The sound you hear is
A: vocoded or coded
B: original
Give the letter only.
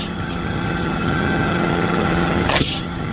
A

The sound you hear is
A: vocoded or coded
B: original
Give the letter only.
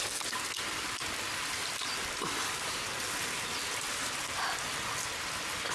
B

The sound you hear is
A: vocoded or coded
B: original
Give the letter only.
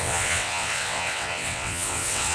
A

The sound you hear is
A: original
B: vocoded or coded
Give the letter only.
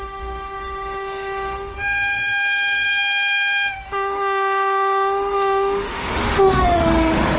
B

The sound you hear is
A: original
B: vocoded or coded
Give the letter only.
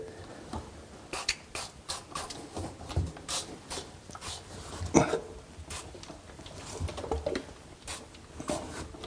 A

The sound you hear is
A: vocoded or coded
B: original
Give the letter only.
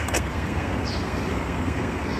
A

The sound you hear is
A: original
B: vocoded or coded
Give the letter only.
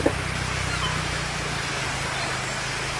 A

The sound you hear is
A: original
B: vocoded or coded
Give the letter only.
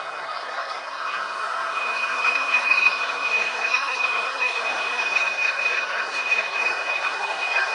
B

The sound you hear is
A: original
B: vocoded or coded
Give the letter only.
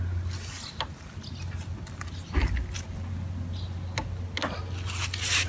A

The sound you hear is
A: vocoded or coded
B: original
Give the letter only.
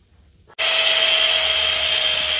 B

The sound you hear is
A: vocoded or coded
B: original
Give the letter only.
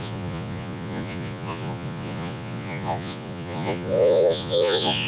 A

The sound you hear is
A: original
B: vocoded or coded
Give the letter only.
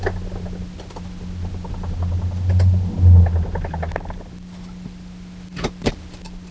A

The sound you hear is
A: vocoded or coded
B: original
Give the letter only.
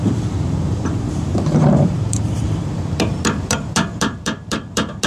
A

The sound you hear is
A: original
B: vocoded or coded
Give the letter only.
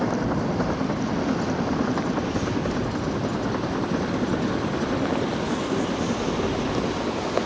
A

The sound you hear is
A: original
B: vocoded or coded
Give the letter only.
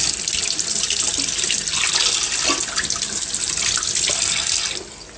A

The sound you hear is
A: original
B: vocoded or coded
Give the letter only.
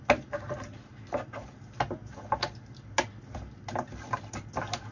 A